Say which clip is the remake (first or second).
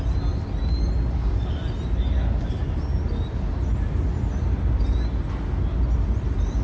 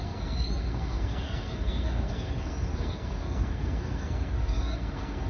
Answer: second